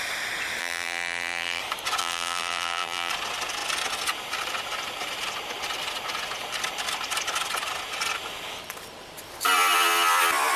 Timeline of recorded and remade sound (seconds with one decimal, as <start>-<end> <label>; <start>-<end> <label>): 0.0-0.6 recorded; 0.6-1.6 remade; 1.6-2.0 recorded; 2.0-3.1 remade; 3.1-10.6 recorded